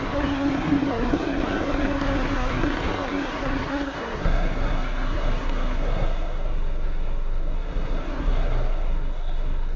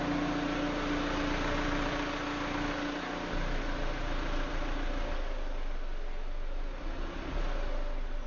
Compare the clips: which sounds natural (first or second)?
second